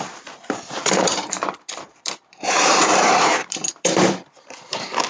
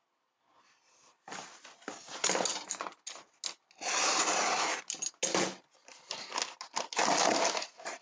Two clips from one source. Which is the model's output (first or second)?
first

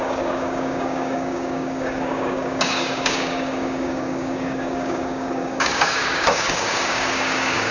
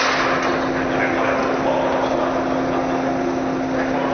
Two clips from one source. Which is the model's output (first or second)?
first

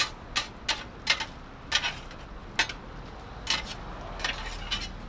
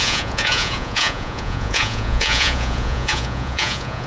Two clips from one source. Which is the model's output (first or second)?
second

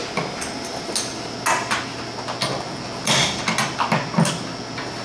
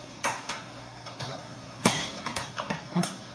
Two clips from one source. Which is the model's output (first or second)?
second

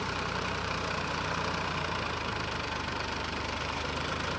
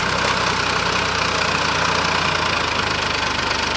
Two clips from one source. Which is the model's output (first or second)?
first